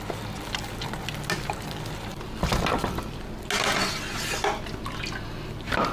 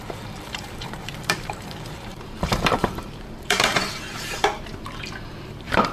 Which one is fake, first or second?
second